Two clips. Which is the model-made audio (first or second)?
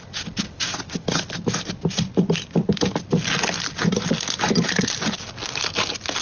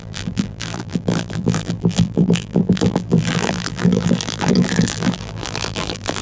second